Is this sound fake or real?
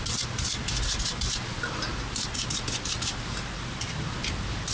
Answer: real